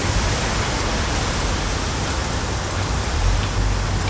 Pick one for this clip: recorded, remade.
recorded